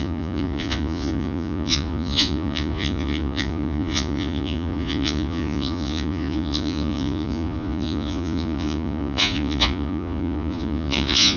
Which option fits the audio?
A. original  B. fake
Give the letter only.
B